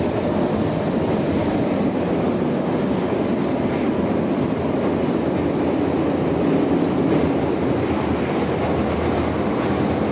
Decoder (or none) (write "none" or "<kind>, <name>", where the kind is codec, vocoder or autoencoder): none